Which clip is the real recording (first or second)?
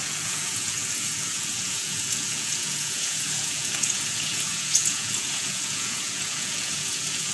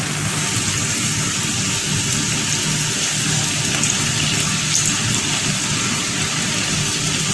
second